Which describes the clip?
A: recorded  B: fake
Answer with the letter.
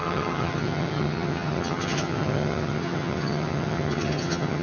B